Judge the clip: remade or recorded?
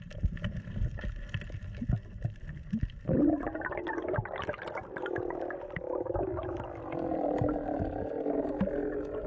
recorded